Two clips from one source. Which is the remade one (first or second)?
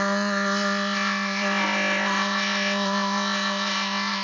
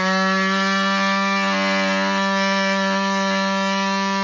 first